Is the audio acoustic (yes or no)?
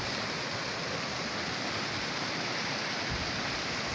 yes